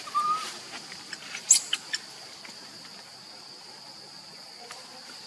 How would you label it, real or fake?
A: real